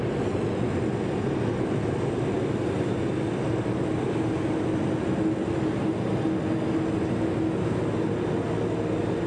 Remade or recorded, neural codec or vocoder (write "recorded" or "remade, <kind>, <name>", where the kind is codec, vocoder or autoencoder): recorded